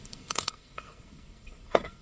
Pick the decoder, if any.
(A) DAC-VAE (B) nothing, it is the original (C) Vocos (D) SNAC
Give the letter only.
D